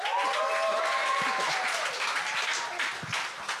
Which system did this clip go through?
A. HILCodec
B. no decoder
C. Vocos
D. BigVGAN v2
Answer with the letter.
B